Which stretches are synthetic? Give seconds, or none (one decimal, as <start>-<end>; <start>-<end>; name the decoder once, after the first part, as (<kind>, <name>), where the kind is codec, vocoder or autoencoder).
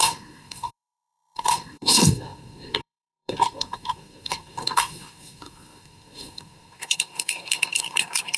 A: 0.0-8.4 (codec, SNAC)